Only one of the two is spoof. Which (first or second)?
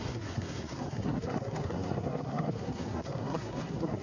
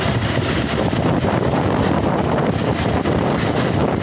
first